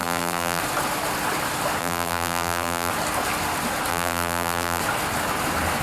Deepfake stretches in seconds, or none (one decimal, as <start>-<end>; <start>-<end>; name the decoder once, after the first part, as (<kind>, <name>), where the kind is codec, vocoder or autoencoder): 0.0-0.6 (vocoder, BigVGAN v2); 1.8-2.9; 3.9-4.8